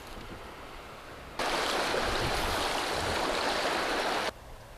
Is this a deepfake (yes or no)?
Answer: no